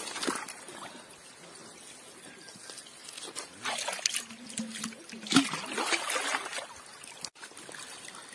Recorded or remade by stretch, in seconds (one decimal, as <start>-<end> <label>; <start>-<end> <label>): 0.0-8.3 recorded